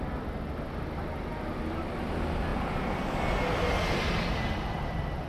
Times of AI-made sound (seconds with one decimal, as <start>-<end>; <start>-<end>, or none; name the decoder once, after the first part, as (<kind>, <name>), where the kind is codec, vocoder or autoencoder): none